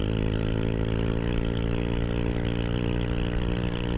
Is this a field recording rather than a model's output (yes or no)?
yes